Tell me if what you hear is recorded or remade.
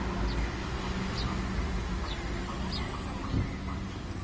recorded